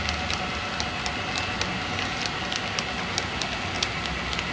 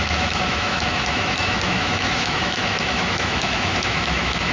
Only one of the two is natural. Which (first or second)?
first